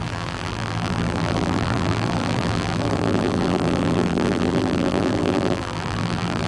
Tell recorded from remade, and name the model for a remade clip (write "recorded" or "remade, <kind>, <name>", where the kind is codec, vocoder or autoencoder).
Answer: remade, vocoder, BigVGAN v2